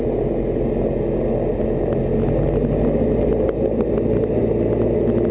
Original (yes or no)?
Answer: yes